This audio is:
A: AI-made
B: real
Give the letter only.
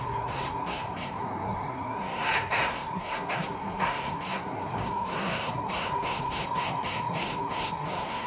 A